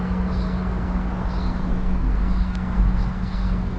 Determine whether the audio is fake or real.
fake